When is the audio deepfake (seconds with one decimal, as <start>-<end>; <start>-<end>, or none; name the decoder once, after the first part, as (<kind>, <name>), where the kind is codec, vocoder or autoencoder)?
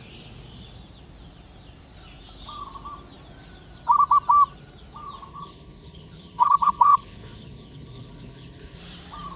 5.3-8.8 (codec, HILCodec)